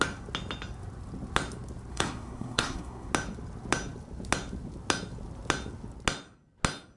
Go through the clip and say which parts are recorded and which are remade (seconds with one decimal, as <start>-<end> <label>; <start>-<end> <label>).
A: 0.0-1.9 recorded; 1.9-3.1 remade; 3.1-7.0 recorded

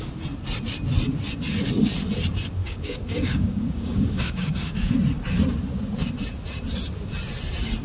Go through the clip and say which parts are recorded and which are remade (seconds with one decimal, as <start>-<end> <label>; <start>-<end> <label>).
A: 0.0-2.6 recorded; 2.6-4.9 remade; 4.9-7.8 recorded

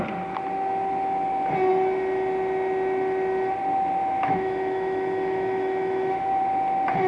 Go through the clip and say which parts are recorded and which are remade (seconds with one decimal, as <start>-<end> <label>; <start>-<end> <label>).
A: 0.0-4.0 recorded; 4.0-6.4 remade; 6.4-7.1 recorded